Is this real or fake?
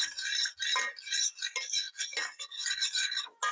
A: real